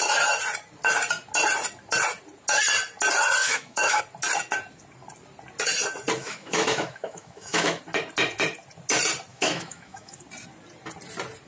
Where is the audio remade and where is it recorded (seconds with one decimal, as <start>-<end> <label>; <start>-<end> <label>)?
0.0-3.4 recorded; 3.4-4.0 remade; 4.0-6.2 recorded; 6.2-7.8 remade; 7.8-9.3 recorded; 9.3-10.2 remade; 10.2-11.5 recorded